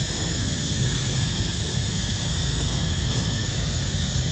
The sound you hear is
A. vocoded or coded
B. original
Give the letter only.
A